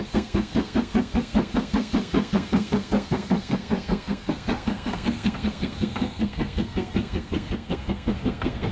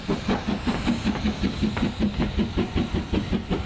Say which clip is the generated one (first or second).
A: first